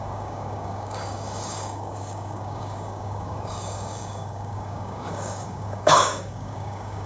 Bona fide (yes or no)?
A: no